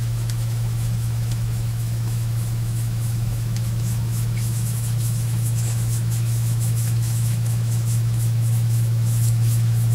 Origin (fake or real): fake